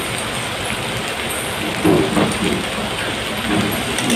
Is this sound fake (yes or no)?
no